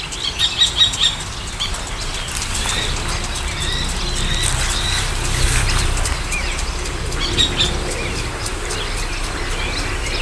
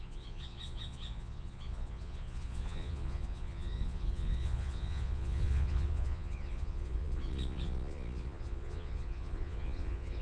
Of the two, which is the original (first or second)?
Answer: first